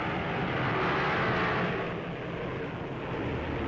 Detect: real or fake real